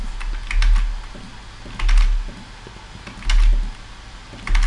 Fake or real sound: real